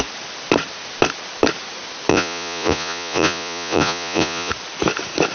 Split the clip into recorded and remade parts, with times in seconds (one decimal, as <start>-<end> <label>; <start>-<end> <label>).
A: 0.0-2.1 recorded; 2.1-4.5 remade; 4.5-5.3 recorded